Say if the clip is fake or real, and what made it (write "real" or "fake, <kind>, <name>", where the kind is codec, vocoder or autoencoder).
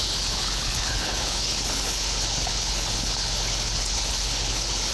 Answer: fake, codec, HILCodec